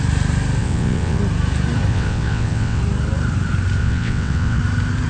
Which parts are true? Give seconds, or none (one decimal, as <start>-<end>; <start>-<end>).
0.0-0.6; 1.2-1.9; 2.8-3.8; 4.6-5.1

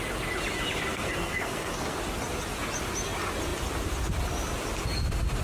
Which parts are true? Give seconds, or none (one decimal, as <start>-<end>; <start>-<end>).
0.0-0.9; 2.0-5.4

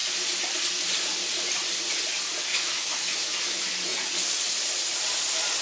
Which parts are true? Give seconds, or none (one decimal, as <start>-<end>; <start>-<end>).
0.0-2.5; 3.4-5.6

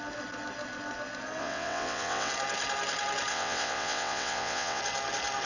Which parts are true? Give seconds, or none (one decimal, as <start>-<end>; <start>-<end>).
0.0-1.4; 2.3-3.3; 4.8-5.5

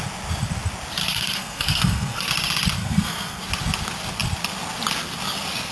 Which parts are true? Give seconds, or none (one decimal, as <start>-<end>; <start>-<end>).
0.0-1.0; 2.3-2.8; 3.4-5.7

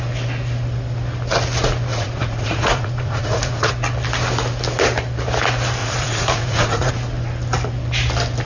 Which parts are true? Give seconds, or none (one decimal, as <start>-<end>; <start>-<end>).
0.0-1.9; 3.7-5.8; 6.9-8.4

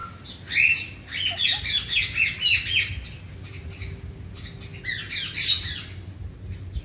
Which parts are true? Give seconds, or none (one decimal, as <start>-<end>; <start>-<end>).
0.0-6.8